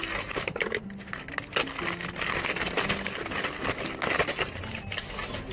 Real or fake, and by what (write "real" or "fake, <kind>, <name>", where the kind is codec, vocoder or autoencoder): real